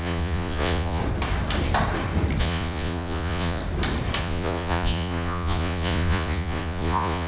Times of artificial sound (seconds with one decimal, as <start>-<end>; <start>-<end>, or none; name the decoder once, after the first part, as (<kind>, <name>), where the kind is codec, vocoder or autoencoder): 0.0-1.0 (vocoder, Vocos); 2.4-3.6; 4.2-7.3